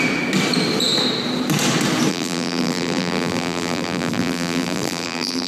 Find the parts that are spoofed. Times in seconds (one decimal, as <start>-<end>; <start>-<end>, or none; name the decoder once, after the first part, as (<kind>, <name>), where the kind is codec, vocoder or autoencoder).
2.1-5.5 (vocoder, BigVGAN v2)